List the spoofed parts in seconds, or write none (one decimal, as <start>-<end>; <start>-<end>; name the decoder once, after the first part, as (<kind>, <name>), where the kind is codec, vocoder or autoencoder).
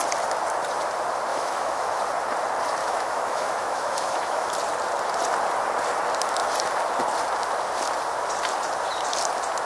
1.3-2.0 (autoencoder, DAC-VAE); 2.8-4.5